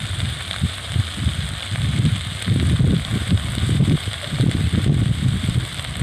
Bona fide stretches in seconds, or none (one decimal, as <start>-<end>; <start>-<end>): none